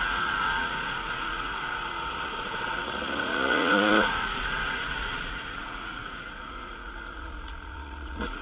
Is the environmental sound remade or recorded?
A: remade